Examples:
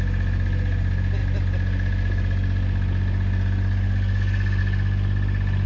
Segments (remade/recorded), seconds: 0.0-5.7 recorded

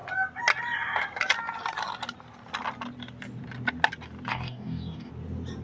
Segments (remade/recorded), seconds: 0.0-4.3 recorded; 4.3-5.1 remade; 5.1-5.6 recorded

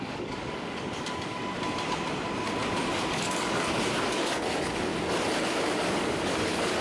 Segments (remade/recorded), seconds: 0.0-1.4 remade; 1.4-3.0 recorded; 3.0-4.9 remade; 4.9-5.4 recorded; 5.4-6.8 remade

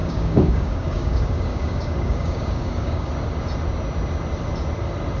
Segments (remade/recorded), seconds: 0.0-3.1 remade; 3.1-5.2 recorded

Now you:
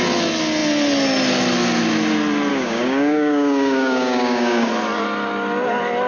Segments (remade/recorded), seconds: 0.0-2.5 recorded; 2.5-4.7 remade; 4.7-6.1 recorded